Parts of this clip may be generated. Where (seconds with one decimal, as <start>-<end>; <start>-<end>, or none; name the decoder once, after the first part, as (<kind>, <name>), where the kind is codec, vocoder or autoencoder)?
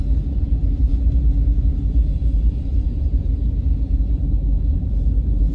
0.0-0.9 (vocoder, BigVGAN v2); 1.7-5.5